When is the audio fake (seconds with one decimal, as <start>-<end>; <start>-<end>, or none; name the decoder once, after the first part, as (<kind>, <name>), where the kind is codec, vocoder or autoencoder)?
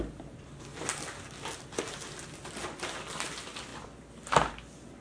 none